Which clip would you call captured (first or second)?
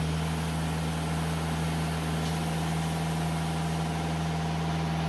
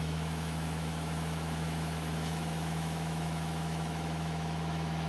first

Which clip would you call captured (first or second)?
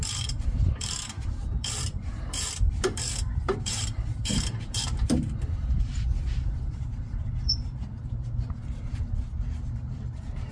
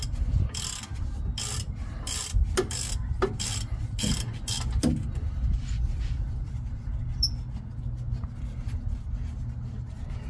second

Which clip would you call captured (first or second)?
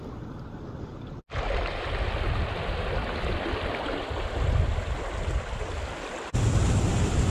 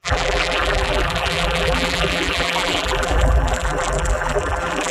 first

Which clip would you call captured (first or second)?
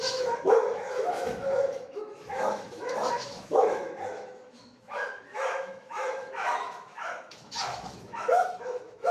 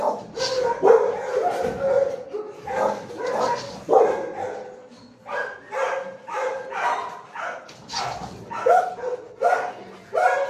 second